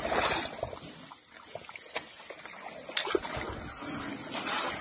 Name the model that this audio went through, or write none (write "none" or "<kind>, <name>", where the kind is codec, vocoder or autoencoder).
none